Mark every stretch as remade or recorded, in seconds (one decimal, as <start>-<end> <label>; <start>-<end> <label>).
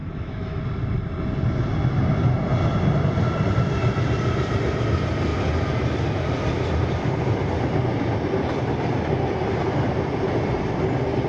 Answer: 0.0-0.6 remade; 0.6-11.3 recorded